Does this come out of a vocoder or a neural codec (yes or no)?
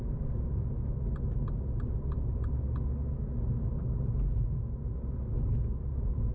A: no